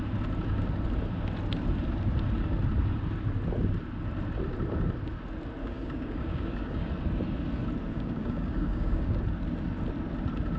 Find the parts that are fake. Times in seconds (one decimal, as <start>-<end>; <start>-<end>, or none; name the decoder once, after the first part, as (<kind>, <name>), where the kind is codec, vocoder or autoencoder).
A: 5.6-6.9 (codec, DAC); 7.9-9.2